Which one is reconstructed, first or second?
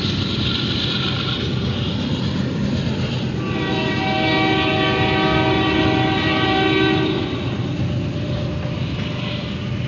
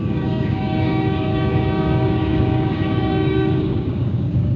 second